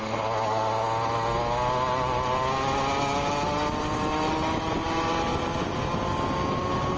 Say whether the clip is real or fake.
real